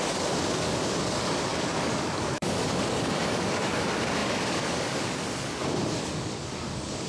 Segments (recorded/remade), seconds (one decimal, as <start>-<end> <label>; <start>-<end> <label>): 0.0-7.1 remade